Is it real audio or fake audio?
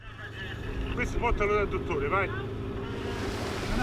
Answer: real